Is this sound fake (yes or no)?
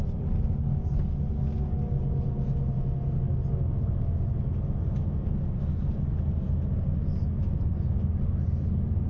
no